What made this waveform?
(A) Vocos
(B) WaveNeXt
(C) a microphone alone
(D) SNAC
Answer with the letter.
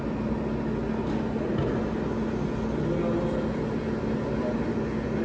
C